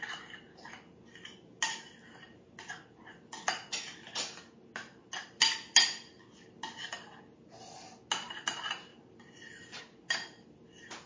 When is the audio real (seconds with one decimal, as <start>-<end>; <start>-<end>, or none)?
0.0-11.1

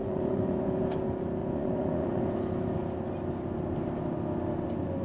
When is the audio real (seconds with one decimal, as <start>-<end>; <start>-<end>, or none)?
0.8-1.4; 2.2-5.0